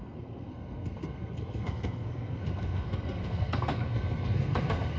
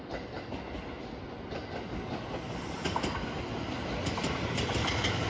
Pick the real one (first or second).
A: second